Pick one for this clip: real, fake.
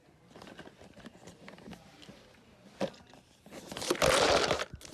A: real